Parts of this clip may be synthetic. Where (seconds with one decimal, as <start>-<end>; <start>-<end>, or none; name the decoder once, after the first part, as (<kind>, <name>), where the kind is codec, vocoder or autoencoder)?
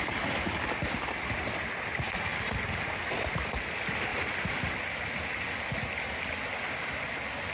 none